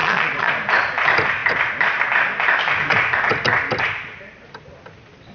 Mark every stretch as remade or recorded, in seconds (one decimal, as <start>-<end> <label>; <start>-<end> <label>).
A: 0.0-0.5 remade; 0.5-5.3 recorded